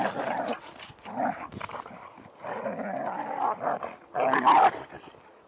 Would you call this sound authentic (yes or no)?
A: yes